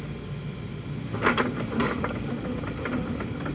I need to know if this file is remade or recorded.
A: recorded